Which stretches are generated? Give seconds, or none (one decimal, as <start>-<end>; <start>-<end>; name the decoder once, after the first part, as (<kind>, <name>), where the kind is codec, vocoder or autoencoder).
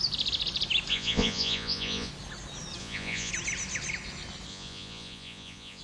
0.9-2.1 (vocoder, Vocos); 2.8-3.3; 4.5-5.8